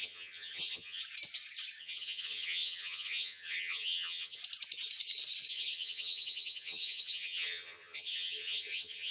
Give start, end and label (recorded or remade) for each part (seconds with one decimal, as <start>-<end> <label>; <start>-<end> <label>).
0.0-1.0 remade; 1.0-1.8 recorded; 1.8-4.4 remade; 4.4-5.5 recorded; 5.5-9.1 remade